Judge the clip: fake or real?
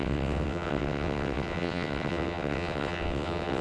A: fake